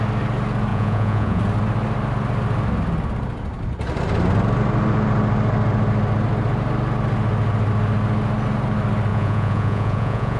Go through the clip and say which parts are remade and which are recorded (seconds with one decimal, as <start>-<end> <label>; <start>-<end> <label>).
0.0-0.7 recorded; 0.7-1.4 remade; 1.4-9.1 recorded; 9.1-10.4 remade